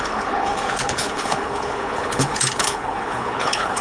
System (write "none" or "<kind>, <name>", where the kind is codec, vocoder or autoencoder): codec, HILCodec